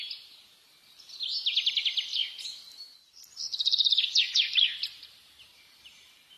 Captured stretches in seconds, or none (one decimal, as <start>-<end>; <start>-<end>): 0.8-4.2

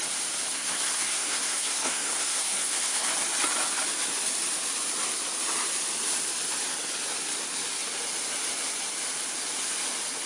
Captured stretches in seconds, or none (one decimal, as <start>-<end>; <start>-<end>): 0.0-0.5; 3.1-10.3

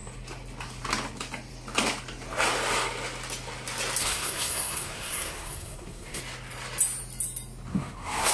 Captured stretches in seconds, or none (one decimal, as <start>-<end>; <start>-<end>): 0.0-4.0; 6.2-7.7

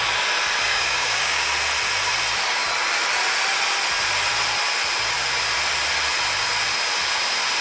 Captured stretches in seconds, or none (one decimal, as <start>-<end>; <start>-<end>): 0.0-0.7; 1.5-7.6

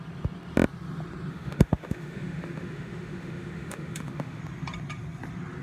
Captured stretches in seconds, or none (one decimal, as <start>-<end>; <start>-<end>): 0.0-1.3; 4.4-5.6

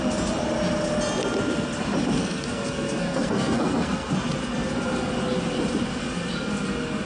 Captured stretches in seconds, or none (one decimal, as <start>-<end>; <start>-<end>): 0.0-2.2; 4.1-7.1

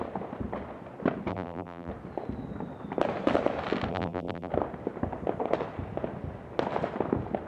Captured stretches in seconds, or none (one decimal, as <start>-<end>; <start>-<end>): 0.0-1.3; 1.9-3.9; 4.5-7.5

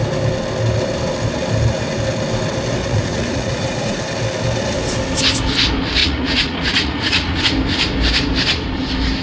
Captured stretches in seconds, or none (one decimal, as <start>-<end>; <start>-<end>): 0.0-2.8; 4.0-6.0; 7.4-9.2